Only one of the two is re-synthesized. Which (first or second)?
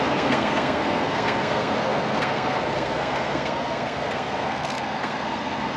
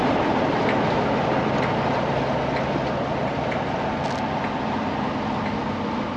first